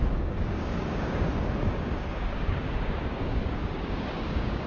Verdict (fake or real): fake